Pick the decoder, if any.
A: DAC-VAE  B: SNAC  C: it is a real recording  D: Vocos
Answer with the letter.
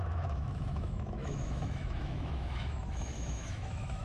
A